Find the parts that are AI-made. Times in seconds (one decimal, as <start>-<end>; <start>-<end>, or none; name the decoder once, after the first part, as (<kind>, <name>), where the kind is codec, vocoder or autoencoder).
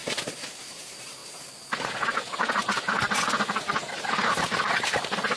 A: 0.0-1.2 (vocoder, BigVGAN v2); 4.4-5.4